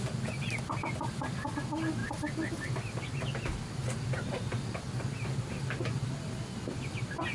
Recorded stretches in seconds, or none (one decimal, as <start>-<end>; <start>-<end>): 0.0-7.3